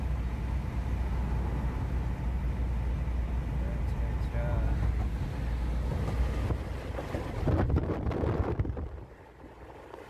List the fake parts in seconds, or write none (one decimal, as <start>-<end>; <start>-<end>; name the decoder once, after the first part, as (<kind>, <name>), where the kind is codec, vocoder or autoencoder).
none